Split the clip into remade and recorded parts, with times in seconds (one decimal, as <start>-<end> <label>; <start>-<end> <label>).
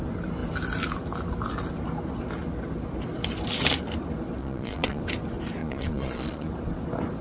0.0-4.4 recorded; 4.4-5.0 remade; 5.0-5.6 recorded; 5.6-6.5 remade; 6.5-7.2 recorded